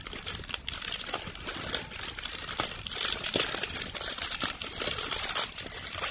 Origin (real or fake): real